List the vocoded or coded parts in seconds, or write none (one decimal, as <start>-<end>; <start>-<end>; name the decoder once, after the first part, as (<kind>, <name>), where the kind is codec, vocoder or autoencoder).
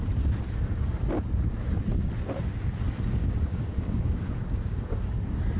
3.2-5.0 (codec, DAC)